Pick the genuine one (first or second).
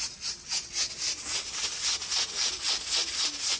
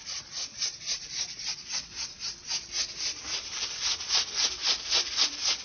first